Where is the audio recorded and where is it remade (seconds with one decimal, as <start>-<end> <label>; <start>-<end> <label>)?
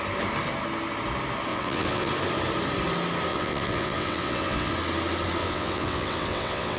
0.0-1.5 recorded; 1.5-2.1 remade; 2.1-3.3 recorded; 3.3-4.7 remade; 4.7-5.4 recorded; 5.4-6.8 remade